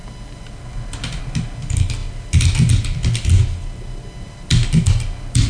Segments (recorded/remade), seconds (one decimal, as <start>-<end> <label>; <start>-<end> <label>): 0.0-5.5 recorded